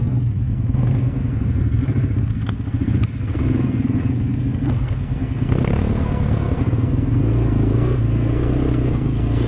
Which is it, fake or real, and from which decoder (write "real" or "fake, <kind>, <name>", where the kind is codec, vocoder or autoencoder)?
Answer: fake, codec, SNAC